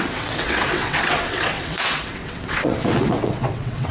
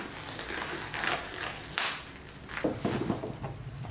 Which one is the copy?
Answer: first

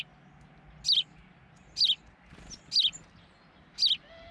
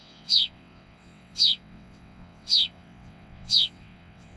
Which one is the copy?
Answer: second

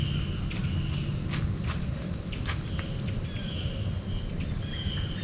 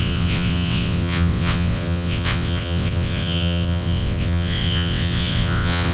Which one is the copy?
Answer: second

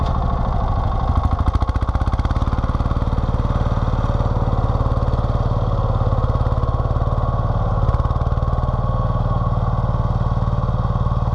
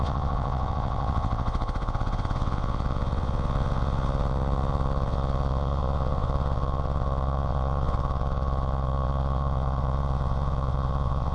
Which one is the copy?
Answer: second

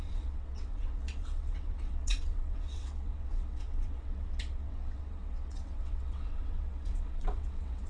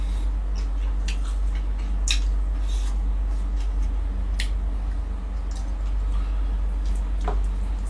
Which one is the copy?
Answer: first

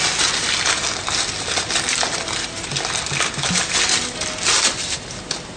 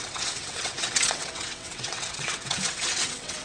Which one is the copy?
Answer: second